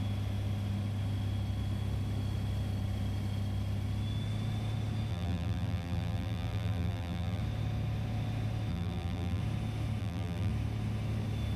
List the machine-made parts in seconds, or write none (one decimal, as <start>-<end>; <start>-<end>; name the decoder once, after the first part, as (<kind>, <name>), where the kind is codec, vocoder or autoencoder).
5.1-7.4 (vocoder, BigVGAN v2); 8.7-9.4; 10.0-10.5